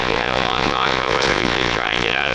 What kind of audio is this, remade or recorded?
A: remade